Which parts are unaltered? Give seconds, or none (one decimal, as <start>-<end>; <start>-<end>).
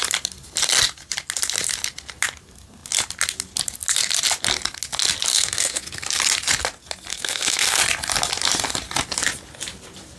0.0-5.3; 6.2-7.1; 7.8-10.2